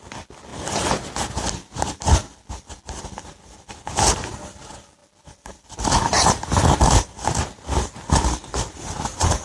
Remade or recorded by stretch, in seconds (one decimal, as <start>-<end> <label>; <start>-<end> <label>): 0.0-5.0 recorded; 5.0-7.3 remade; 7.3-9.4 recorded